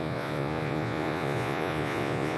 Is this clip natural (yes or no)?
no